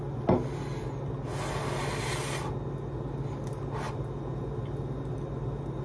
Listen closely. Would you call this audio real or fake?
real